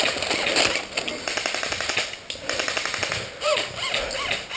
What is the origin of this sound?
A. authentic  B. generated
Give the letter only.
A